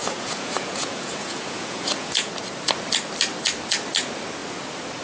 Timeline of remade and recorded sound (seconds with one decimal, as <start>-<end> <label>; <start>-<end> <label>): 0.0-2.3 remade; 2.3-5.0 recorded

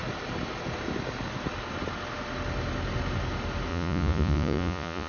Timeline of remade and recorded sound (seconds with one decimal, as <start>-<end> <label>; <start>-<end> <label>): 0.0-3.7 recorded; 3.7-5.1 remade

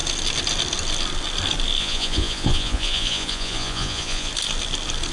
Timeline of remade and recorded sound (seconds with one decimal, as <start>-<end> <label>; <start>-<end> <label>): 0.0-1.8 recorded; 1.8-4.3 remade; 4.3-5.1 recorded

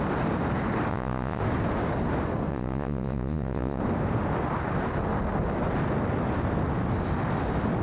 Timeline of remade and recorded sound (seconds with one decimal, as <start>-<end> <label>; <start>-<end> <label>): 0.0-0.9 recorded; 0.9-1.4 remade; 1.4-2.5 recorded; 2.5-3.8 remade; 3.8-7.8 recorded

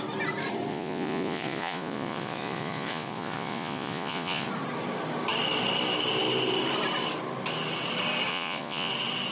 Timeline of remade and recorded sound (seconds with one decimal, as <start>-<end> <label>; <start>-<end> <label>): 0.0-0.7 recorded; 0.7-4.5 remade; 4.5-8.3 recorded; 8.3-8.9 remade; 8.9-9.3 recorded